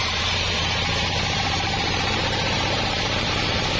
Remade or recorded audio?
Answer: remade